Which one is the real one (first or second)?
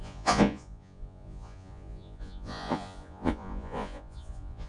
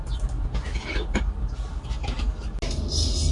second